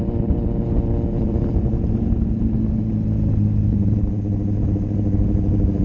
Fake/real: real